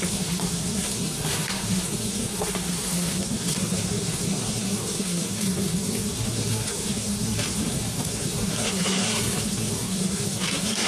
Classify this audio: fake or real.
fake